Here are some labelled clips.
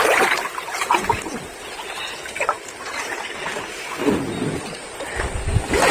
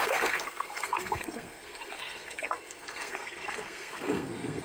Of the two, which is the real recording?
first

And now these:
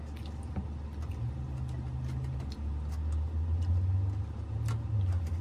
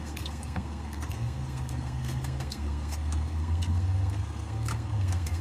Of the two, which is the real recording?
first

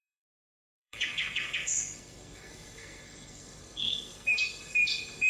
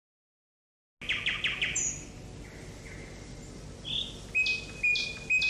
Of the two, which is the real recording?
second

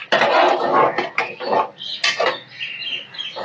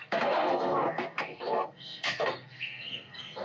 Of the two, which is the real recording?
first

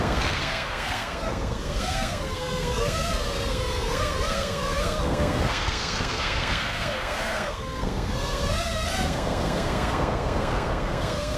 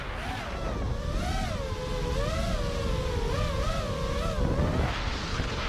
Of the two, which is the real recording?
second